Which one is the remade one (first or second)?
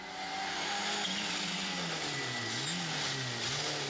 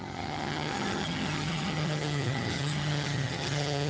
second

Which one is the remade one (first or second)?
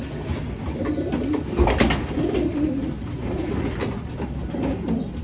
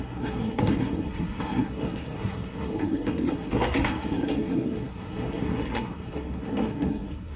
second